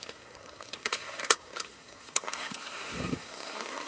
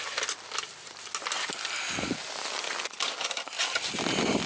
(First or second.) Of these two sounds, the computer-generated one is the first